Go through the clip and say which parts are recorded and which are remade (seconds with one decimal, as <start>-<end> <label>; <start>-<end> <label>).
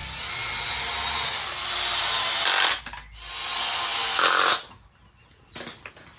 0.0-3.9 recorded; 3.9-4.7 remade; 4.7-6.2 recorded